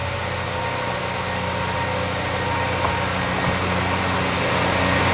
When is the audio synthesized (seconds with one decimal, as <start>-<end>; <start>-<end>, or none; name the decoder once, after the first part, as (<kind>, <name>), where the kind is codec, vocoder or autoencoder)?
none